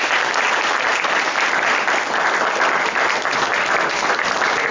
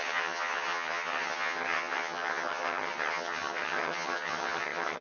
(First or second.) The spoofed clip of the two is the second